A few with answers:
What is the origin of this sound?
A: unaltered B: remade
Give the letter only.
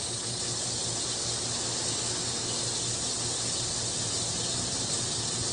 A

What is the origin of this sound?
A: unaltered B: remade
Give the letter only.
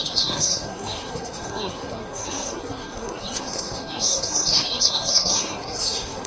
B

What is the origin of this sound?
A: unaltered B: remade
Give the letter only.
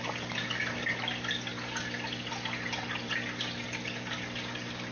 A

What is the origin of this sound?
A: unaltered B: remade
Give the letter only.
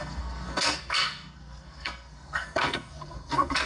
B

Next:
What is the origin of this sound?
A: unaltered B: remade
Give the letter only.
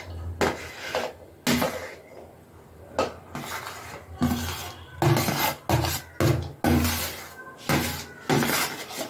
A